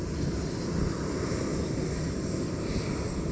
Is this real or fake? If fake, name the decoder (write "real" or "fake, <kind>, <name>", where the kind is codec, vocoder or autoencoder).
real